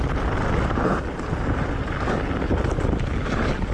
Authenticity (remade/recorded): recorded